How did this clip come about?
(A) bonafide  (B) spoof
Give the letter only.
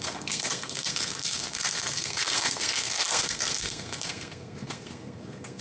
B